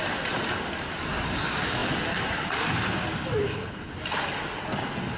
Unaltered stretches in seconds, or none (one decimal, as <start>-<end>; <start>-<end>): 0.0-3.4; 3.9-5.2